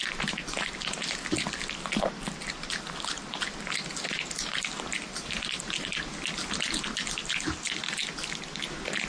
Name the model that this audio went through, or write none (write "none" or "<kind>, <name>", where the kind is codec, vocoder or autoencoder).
none